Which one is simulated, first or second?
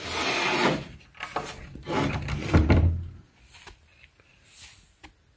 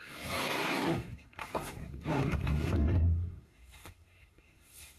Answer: second